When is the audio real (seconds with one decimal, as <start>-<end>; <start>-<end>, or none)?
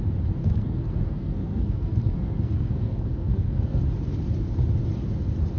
0.0-0.4; 3.8-5.6